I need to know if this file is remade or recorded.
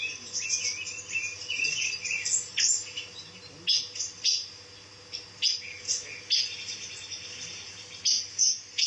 recorded